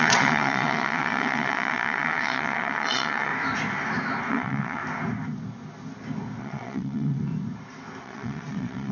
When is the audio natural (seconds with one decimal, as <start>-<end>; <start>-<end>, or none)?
3.3-4.3; 4.8-6.4; 7.3-8.0